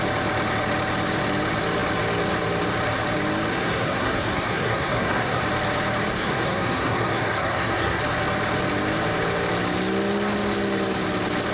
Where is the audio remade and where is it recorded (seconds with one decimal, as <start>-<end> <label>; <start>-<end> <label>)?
0.0-3.5 recorded; 3.5-5.4 remade; 5.4-6.1 recorded; 6.1-8.0 remade; 8.0-11.5 recorded